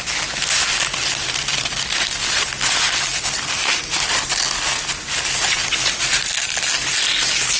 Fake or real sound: real